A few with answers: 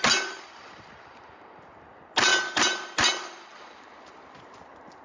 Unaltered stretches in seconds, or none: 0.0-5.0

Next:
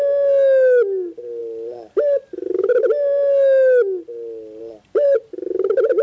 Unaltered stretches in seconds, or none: 0.0-6.0